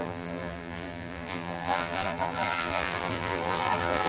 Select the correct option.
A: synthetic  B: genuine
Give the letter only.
A